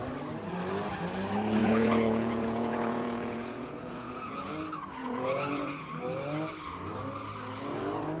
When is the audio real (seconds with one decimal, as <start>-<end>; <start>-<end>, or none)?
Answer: 0.0-1.6; 4.5-5.0; 6.0-8.2